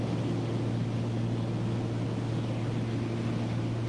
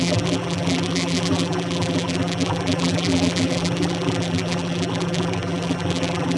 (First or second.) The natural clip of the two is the first